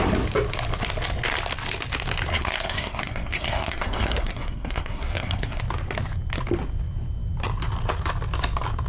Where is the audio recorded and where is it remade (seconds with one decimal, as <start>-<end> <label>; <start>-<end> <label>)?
0.0-2.3 recorded; 2.3-5.6 remade; 5.6-8.9 recorded